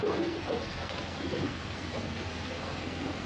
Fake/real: fake